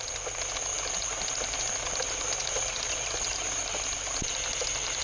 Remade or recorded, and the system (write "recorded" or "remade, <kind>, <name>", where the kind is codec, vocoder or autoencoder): recorded